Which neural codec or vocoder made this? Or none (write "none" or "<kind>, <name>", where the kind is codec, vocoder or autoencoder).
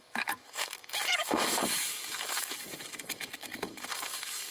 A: codec, DAC